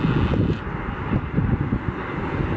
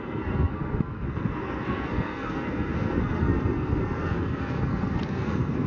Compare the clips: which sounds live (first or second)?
first